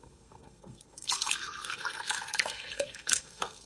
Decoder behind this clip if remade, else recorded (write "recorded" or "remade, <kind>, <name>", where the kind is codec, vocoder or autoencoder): remade, codec, SNAC